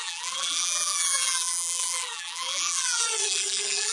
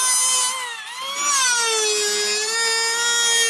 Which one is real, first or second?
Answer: second